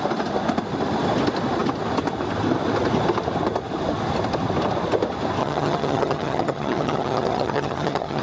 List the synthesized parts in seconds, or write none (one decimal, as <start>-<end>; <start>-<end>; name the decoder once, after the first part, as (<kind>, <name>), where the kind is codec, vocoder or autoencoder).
5.4-8.2 (vocoder, HiFi-GAN)